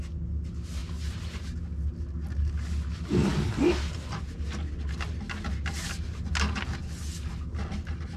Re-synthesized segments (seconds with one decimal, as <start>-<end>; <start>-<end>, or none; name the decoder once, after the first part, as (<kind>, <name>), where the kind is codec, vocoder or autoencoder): none